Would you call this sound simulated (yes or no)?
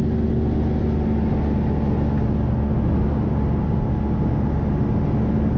no